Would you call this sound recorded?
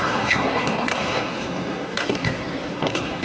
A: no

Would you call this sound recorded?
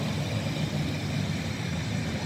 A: yes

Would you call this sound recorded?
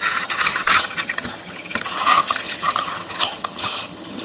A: no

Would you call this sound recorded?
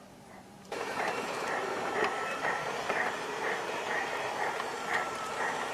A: no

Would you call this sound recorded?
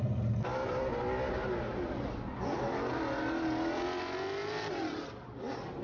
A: yes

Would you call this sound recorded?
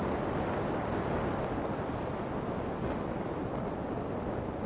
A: yes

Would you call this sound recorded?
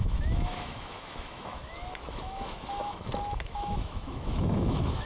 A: no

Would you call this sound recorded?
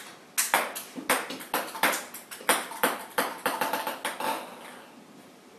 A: yes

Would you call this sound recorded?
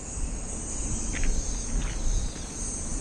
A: yes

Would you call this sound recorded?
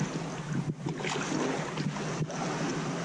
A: yes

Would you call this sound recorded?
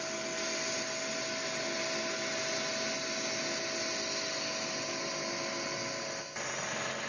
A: yes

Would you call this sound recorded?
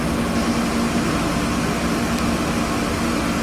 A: yes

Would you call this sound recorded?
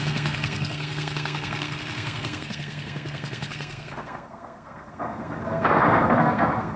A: no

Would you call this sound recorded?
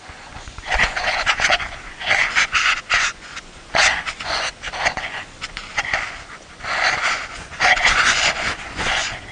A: no